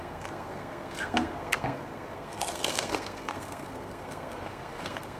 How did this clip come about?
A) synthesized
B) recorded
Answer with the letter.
A